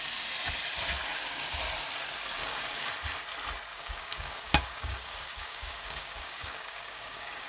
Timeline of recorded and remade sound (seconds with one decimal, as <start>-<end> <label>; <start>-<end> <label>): 0.0-1.1 recorded; 1.1-1.6 remade; 1.6-2.4 recorded; 2.4-2.9 remade; 2.9-3.7 recorded; 3.7-7.5 remade

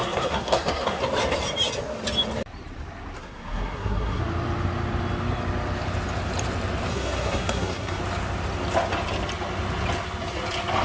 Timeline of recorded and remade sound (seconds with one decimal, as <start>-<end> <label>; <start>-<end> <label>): 0.0-1.0 remade; 1.0-3.2 recorded; 3.2-4.2 remade; 4.2-6.9 recorded; 6.9-8.0 remade; 8.0-10.8 recorded

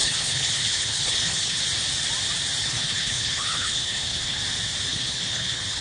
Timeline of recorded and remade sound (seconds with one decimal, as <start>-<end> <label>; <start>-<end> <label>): 0.0-1.6 remade; 1.6-2.6 recorded; 2.6-4.4 remade; 4.4-4.9 recorded; 4.9-5.8 remade

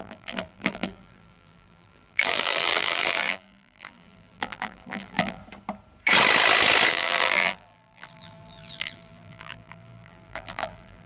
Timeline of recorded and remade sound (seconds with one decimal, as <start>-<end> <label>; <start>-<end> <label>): 0.0-5.4 remade; 5.4-6.9 recorded; 6.9-11.1 remade

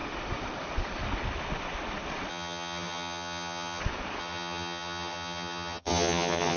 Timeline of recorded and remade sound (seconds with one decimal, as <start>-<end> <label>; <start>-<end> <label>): 0.0-2.3 recorded; 2.3-3.8 remade; 3.8-4.2 recorded; 4.2-6.6 remade

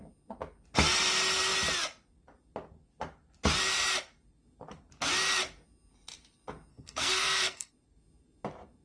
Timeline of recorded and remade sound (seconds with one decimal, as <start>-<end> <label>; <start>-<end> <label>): 0.0-6.7 recorded; 6.7-7.7 remade; 7.7-8.8 recorded